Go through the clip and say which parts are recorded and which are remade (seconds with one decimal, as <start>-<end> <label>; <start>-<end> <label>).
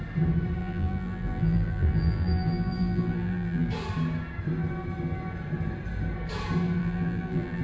0.0-0.6 recorded; 0.6-3.7 remade; 3.7-6.8 recorded; 6.8-7.6 remade